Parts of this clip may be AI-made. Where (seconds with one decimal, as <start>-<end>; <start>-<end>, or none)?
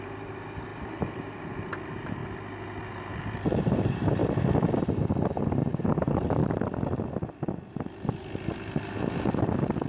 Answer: 0.0-2.2; 2.8-4.2; 5.4-6.4